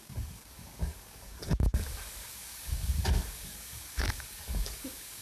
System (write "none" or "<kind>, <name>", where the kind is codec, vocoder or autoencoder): codec, DAC